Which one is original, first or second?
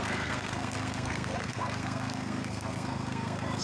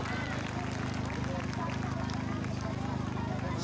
second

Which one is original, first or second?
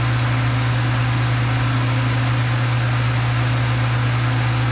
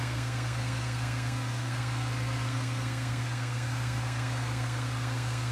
first